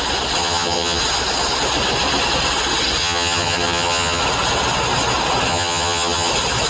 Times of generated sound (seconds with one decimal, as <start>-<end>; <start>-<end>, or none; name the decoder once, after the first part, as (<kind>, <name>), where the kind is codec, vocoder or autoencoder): 0.4-1.0 (vocoder, HiFi-GAN); 3.0-4.2; 5.5-6.3